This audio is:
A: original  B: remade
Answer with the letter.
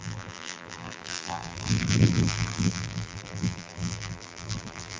B